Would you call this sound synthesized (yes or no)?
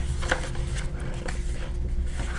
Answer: no